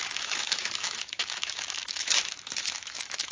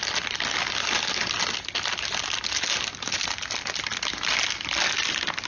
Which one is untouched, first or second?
second